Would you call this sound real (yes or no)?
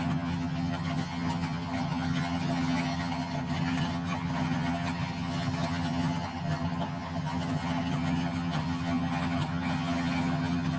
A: no